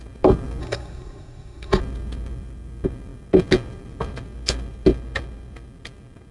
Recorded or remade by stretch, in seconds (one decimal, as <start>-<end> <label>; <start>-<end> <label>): 0.0-0.6 recorded; 0.6-1.8 remade; 1.8-6.3 recorded